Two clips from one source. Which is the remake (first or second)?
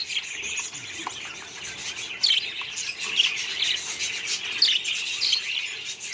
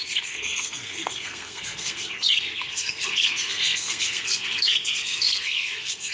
second